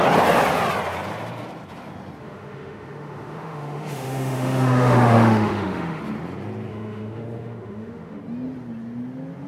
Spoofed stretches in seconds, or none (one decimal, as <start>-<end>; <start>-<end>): 2.2-6.0; 6.7-8.2